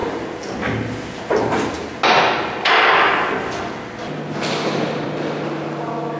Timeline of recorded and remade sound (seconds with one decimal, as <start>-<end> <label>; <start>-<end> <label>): 0.0-6.2 recorded